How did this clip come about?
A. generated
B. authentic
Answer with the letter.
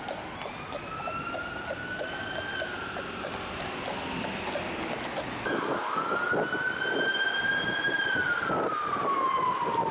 B